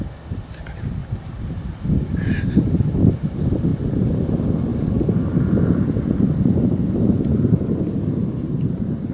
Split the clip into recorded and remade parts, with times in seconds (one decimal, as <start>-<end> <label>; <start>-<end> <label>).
0.0-1.0 recorded; 1.0-2.7 remade; 2.7-4.7 recorded; 4.7-6.7 remade; 6.7-9.1 recorded